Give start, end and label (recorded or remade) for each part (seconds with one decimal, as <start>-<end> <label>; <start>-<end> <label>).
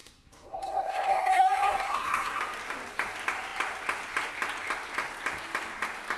0.0-2.4 remade; 2.4-6.2 recorded